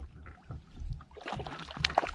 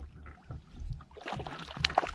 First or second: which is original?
second